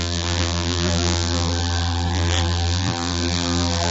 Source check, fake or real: fake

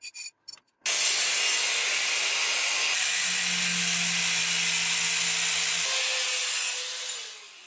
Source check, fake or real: real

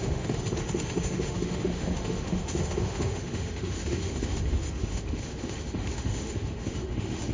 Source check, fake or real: fake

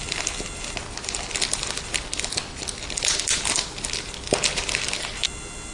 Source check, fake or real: real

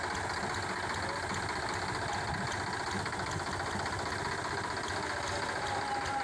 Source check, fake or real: real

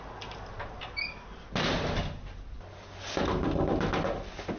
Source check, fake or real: real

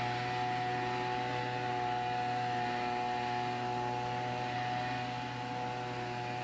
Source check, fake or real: real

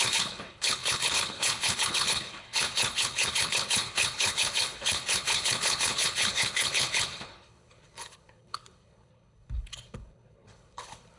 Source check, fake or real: fake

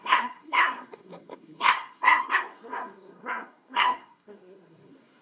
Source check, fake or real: fake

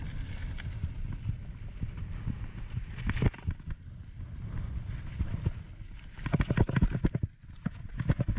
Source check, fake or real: real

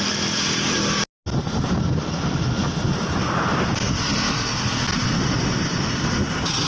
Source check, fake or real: real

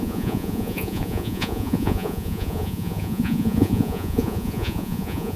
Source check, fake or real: fake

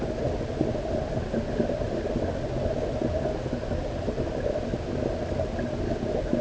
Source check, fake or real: real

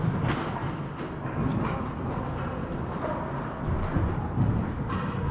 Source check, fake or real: real